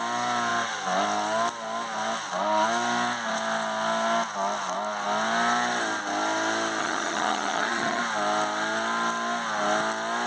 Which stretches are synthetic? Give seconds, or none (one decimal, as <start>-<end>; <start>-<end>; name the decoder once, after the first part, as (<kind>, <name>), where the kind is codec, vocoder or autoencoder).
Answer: 6.8-8.0 (vocoder, HiFi-GAN)